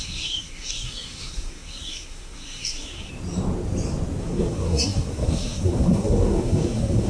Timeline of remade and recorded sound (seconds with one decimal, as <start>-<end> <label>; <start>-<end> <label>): 0.0-3.1 remade; 3.1-4.2 recorded; 4.2-7.1 remade